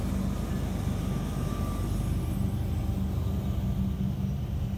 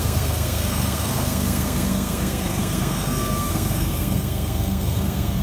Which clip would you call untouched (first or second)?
first